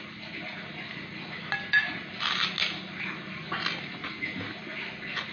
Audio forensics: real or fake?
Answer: real